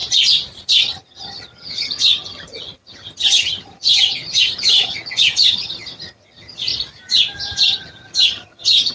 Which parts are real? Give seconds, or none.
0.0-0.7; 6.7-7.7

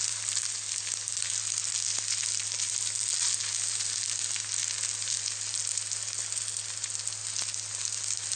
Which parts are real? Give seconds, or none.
0.0-8.4

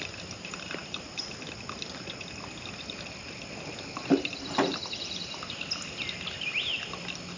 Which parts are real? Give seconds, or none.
0.0-7.4

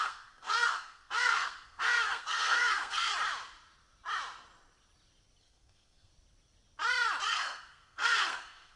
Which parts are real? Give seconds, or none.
3.1-5.4; 6.1-7.3

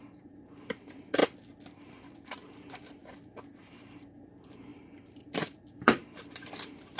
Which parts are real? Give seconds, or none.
1.2-1.9

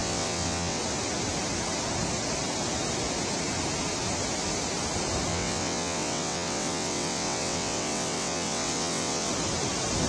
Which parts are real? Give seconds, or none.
0.8-5.3; 9.3-10.1